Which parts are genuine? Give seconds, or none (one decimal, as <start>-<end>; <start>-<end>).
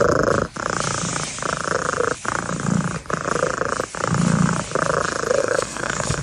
0.0-5.4